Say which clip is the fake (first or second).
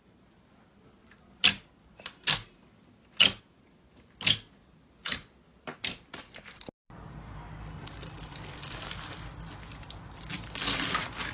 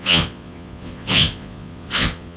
second